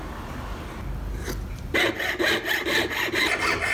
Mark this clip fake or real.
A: real